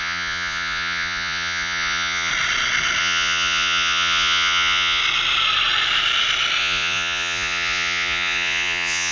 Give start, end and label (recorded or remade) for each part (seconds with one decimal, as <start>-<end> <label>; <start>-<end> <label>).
0.0-2.3 remade; 2.3-3.0 recorded; 3.0-5.0 remade; 5.0-6.6 recorded; 6.6-9.1 remade

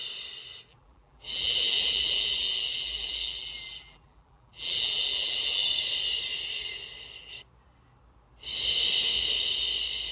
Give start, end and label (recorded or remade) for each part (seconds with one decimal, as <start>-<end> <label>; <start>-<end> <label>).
0.0-0.7 recorded; 0.7-5.7 remade; 5.7-10.1 recorded

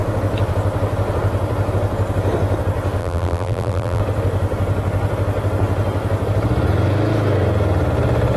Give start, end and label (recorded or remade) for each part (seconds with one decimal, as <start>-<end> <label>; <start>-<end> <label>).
0.0-3.0 recorded; 3.0-4.0 remade; 4.0-8.4 recorded

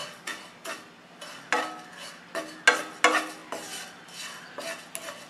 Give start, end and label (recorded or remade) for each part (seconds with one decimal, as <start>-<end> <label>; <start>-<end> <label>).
0.0-5.3 recorded

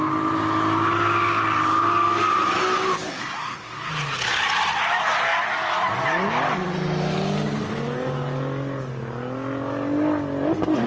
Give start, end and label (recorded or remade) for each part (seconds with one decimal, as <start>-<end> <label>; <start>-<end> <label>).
0.0-3.1 recorded; 3.1-3.9 remade; 3.9-10.9 recorded

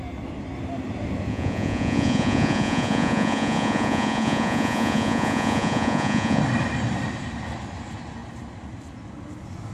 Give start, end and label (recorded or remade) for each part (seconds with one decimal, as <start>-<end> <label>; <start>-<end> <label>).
0.0-1.3 recorded; 1.3-6.4 remade; 6.4-9.7 recorded